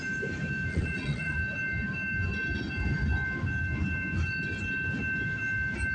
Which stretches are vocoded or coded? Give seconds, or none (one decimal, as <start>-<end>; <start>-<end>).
0.7-1.4